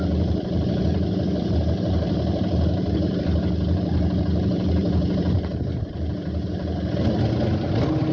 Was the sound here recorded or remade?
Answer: recorded